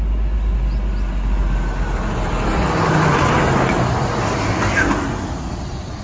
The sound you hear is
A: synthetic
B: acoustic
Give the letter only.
B